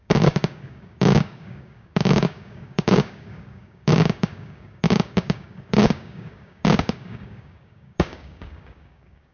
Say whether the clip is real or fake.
fake